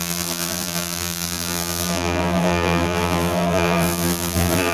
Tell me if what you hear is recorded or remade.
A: remade